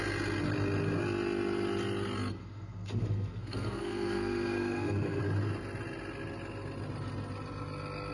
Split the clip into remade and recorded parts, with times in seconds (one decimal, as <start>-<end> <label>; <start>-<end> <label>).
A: 0.0-2.4 recorded; 2.4-5.2 remade; 5.2-8.1 recorded